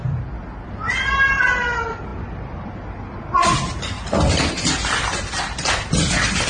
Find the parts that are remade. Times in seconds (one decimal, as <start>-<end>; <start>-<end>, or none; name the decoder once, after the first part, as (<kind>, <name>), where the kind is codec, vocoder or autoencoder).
none